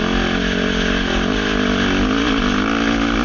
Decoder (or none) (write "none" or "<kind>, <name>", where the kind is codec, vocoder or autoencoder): none